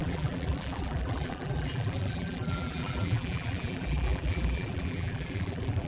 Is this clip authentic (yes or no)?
no